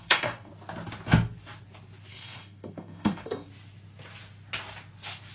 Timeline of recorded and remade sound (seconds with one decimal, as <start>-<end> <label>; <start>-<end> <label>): 0.0-0.5 remade; 0.5-2.1 recorded; 2.1-3.5 remade; 3.5-5.3 recorded